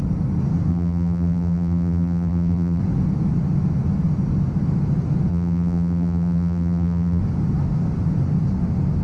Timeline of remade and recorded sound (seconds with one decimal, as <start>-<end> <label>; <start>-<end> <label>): 0.0-0.7 recorded; 0.7-2.8 remade; 2.8-5.3 recorded; 5.3-7.2 remade; 7.2-9.0 recorded